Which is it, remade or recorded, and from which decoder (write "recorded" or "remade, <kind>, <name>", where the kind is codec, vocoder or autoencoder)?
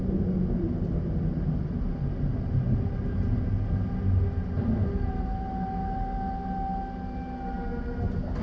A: recorded